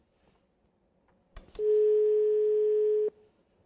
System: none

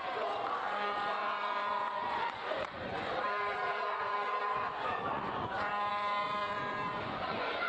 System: vocoder, Vocos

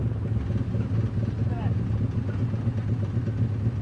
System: none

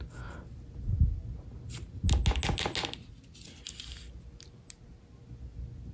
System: none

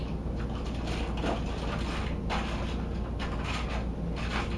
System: none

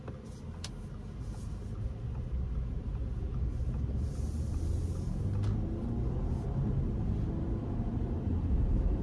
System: none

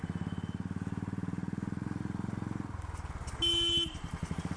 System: none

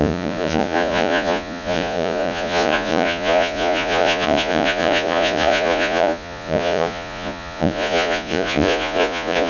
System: vocoder, Vocos